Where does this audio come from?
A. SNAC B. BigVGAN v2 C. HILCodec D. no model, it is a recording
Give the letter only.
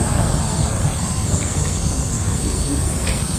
A